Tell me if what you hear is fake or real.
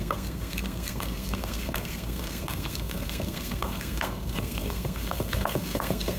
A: fake